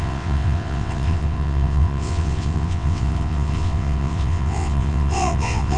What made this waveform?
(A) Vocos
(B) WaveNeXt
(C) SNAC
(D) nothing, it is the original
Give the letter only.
B